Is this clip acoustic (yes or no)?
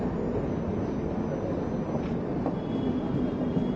yes